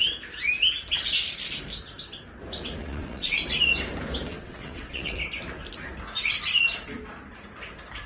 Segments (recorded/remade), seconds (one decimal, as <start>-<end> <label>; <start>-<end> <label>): 0.0-2.8 recorded; 2.8-3.4 remade; 3.4-4.3 recorded; 4.3-5.2 remade; 5.2-8.1 recorded